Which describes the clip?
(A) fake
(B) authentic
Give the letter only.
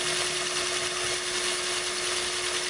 B